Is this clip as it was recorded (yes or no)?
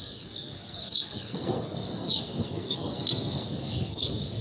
no